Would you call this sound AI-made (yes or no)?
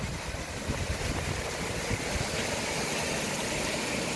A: no